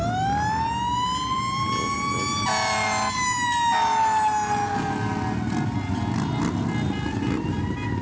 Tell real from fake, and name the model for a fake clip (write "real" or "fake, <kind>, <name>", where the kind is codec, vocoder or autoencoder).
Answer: real